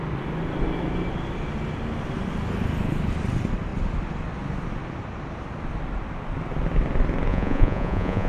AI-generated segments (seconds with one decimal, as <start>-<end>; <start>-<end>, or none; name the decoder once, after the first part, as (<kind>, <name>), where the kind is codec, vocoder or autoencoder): 7.3-8.3 (vocoder, Vocos)